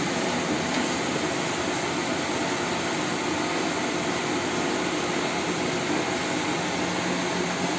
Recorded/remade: recorded